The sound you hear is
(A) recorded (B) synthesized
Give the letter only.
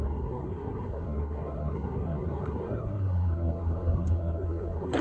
B